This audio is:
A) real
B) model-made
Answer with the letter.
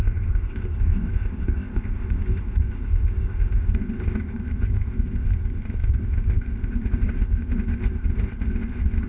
B